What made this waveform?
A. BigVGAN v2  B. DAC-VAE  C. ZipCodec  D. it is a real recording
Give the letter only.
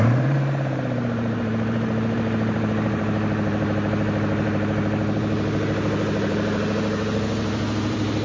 A